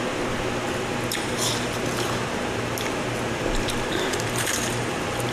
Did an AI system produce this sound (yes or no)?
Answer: yes